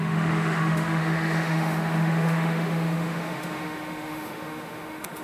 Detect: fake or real fake